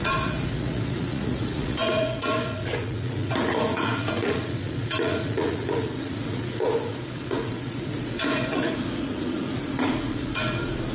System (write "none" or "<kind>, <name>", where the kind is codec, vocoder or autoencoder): vocoder, Vocos